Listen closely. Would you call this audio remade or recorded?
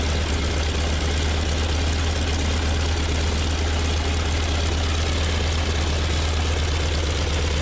recorded